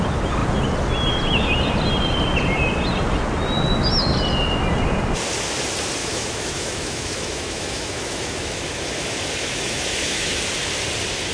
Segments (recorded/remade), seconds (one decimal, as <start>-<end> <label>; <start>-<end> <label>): 0.0-6.0 recorded; 6.0-10.4 remade; 10.4-11.3 recorded